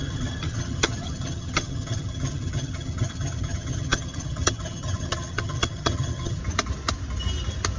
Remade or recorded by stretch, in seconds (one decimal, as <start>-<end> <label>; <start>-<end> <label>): 0.0-6.4 remade; 6.4-7.8 recorded